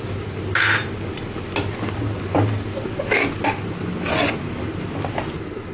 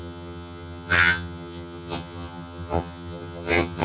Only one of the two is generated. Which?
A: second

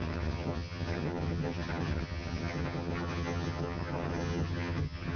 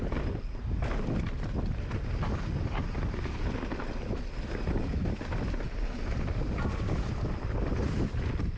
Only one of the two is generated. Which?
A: first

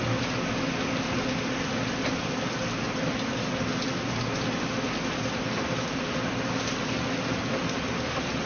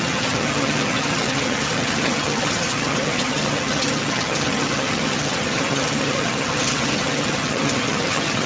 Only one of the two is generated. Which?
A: second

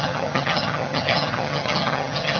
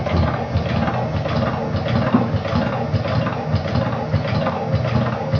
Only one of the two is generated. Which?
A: first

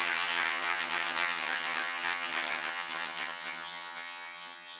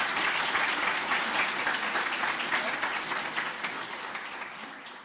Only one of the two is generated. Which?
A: first